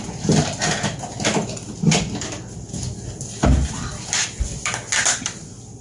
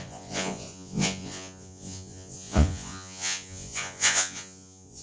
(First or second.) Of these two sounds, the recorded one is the first